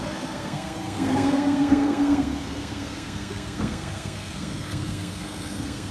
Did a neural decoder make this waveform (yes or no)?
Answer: yes